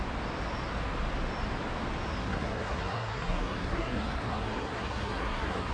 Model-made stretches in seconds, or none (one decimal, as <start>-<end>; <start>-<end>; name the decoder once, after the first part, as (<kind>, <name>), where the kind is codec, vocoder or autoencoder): 2.2-5.7 (codec, SNAC)